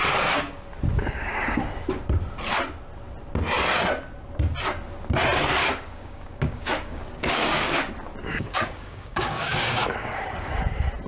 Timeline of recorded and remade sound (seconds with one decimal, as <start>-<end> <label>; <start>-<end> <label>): 0.0-0.9 recorded; 0.9-1.6 remade; 1.6-5.6 recorded; 5.6-7.9 remade; 7.9-8.3 recorded; 8.3-10.5 remade; 10.5-11.1 recorded